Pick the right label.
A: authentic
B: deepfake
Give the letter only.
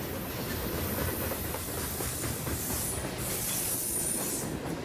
A